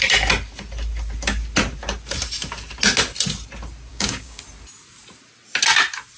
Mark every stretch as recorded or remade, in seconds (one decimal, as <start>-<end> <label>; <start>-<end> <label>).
0.0-3.9 recorded; 3.9-4.4 remade; 4.4-6.2 recorded